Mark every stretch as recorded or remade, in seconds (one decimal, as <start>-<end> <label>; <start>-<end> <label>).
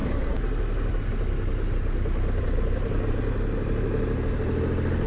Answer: 0.0-5.1 recorded